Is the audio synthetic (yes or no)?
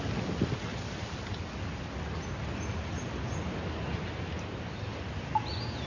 no